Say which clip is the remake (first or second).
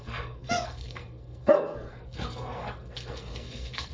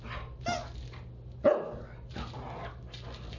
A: first